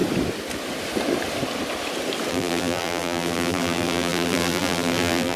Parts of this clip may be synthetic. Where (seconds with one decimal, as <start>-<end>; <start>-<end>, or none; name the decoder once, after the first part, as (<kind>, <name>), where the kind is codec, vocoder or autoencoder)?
2.3-5.4 (vocoder, BigVGAN v2)